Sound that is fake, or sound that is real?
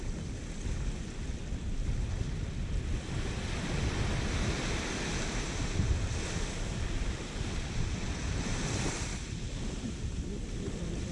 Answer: real